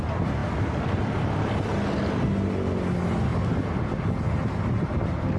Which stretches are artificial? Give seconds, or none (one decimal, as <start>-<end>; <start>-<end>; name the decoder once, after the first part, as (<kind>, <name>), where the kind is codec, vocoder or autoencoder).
none